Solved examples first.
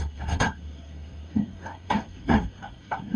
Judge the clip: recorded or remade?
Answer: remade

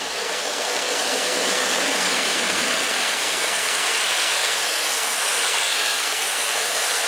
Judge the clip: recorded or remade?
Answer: remade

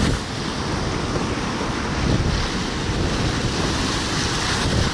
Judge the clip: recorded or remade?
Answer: recorded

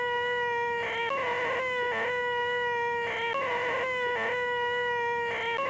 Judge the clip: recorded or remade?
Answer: recorded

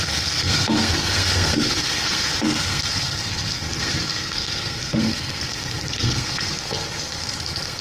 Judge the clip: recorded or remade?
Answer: remade